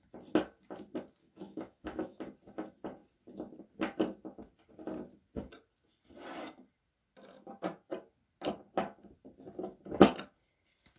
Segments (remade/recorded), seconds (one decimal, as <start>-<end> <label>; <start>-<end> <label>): 0.0-1.2 recorded; 1.2-2.2 remade; 2.2-11.0 recorded